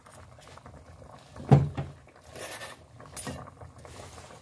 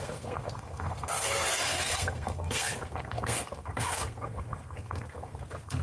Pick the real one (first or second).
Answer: first